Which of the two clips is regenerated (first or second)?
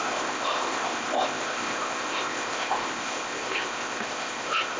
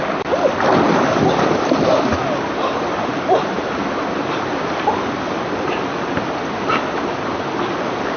first